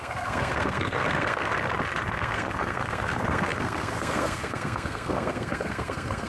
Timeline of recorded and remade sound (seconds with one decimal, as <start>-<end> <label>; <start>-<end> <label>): 0.0-1.5 remade; 1.5-2.1 recorded; 2.1-6.3 remade